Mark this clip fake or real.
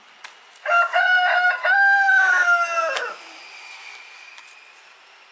real